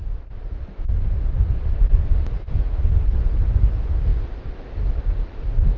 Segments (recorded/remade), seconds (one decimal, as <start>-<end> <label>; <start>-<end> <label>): 0.0-5.8 recorded